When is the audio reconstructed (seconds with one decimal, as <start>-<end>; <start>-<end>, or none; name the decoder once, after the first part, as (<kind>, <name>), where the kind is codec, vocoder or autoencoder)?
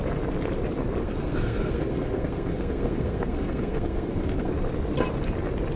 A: 1.0-4.5 (codec, SNAC)